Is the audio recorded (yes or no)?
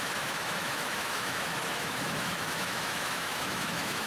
no